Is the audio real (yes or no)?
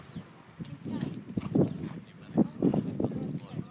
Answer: yes